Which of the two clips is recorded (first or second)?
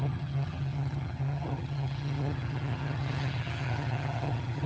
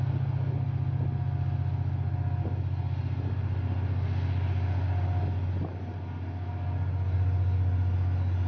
second